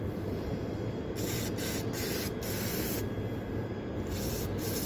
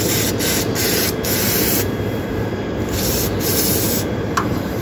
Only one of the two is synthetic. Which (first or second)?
second